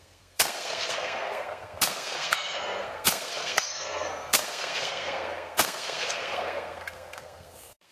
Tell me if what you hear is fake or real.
fake